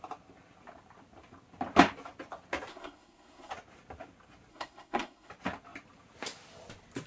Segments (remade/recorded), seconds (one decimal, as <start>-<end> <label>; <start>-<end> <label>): 0.0-2.7 recorded; 2.7-3.5 remade; 3.5-4.5 recorded; 4.5-5.3 remade; 5.3-7.1 recorded